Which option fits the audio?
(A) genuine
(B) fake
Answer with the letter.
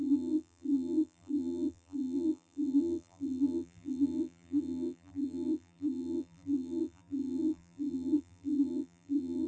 B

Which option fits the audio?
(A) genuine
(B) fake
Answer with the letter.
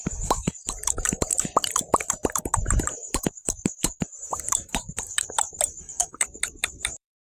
B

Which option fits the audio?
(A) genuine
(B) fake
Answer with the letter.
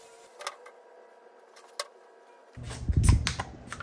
A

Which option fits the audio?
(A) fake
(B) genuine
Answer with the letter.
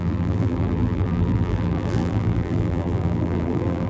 A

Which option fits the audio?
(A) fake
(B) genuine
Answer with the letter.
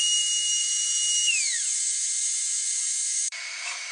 A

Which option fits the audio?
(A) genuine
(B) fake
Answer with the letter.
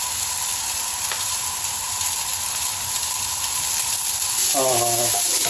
A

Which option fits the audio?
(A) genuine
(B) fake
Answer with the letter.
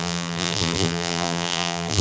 B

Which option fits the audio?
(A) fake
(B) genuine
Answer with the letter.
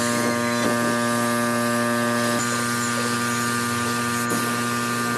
B